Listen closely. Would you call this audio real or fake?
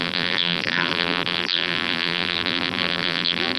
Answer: fake